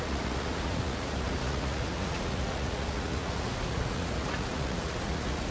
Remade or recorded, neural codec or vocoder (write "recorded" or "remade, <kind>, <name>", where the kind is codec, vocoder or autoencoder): remade, vocoder, Vocos